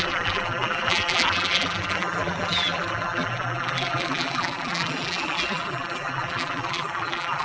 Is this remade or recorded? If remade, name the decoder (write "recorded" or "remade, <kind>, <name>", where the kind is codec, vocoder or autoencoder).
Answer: remade, vocoder, BigVGAN v2